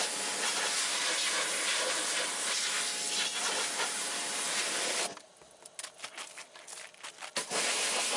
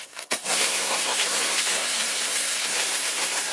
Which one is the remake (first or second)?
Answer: second